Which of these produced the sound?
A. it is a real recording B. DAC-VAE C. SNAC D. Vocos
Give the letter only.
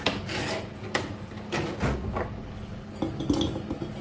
A